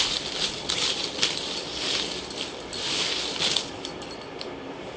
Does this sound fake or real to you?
real